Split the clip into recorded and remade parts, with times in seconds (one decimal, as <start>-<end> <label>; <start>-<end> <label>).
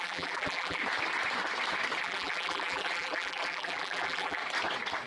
0.0-0.8 remade; 0.8-2.0 recorded; 2.0-4.4 remade; 4.4-5.1 recorded